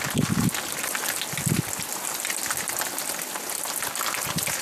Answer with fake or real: real